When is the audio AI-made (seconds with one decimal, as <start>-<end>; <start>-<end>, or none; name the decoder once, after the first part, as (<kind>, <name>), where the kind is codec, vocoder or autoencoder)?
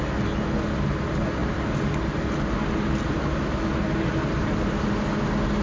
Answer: none